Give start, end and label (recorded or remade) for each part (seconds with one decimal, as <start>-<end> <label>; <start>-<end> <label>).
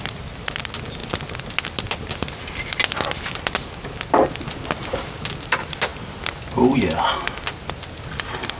0.0-8.6 recorded